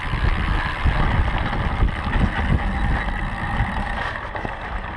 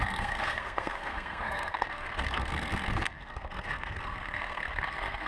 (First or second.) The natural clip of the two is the first